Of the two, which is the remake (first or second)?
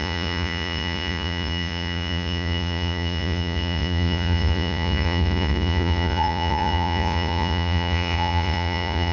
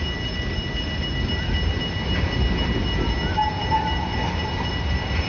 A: first